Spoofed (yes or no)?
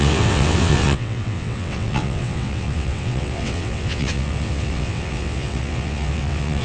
yes